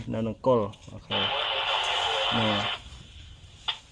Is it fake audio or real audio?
real